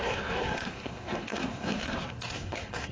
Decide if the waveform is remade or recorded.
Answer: remade